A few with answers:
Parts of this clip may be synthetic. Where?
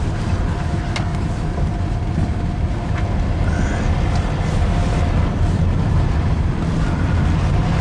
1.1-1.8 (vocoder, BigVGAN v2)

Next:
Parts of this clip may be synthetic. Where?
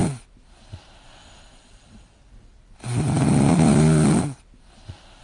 3.5-4.7 (vocoder, BigVGAN v2)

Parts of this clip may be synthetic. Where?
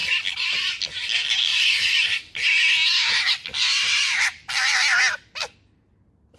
1.5-5.0 (vocoder, BigVGAN v2)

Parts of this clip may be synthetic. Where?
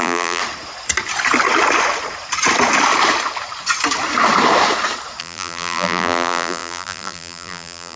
0.0-0.4 (vocoder, BigVGAN v2); 5.2-8.0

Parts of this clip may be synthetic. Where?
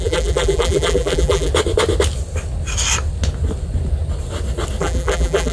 0.0-1.5 (vocoder, BigVGAN v2); 4.8-5.5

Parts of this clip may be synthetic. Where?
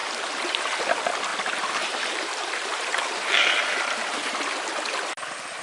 0.0-0.6 (vocoder, BigVGAN v2); 1.3-4.4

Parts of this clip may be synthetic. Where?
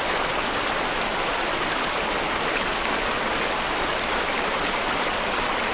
0.0-5.7 (vocoder, BigVGAN v2)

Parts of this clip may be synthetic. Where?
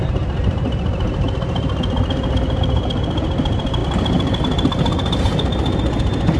3.8-4.4 (vocoder, BigVGAN v2)